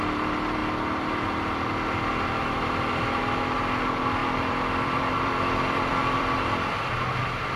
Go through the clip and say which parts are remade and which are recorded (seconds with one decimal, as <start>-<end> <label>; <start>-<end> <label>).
0.0-4.2 recorded; 4.2-6.7 remade; 6.7-7.6 recorded